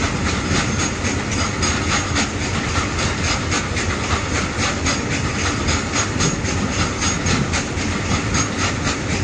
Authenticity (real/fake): real